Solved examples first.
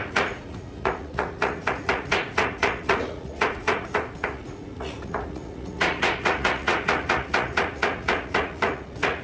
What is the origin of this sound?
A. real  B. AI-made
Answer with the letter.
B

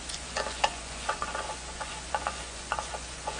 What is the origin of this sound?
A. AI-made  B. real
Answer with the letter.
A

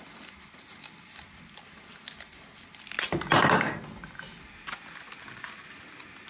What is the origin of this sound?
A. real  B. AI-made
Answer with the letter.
A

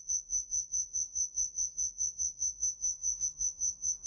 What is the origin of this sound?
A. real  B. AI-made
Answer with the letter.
B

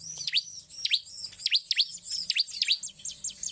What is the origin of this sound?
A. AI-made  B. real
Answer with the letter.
B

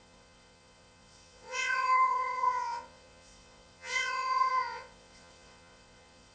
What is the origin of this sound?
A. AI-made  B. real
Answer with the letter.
A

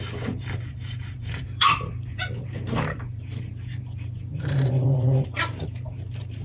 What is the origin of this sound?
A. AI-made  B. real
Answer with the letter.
A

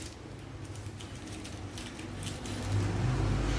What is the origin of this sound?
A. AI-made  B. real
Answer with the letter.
B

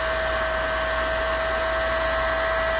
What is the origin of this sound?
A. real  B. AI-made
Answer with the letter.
A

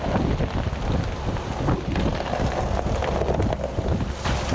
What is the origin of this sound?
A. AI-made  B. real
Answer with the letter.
B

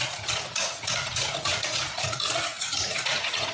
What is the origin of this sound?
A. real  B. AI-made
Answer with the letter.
B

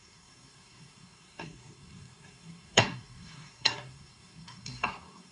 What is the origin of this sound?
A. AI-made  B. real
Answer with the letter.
A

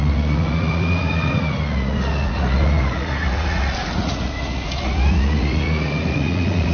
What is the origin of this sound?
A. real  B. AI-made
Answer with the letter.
B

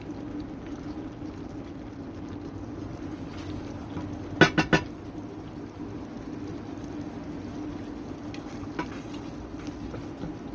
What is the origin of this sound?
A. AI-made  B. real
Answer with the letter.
B